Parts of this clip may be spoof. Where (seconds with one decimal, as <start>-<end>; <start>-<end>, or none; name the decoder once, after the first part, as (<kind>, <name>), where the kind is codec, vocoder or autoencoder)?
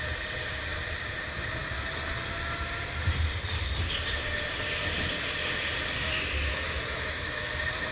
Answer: 6.5-7.5 (autoencoder, DAC-VAE)